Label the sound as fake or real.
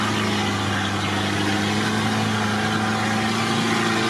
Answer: real